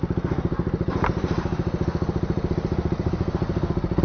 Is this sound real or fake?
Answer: real